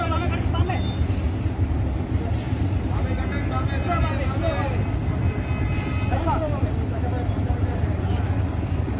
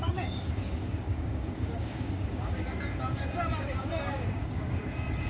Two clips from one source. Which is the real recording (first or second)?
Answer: first